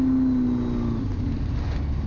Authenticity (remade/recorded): recorded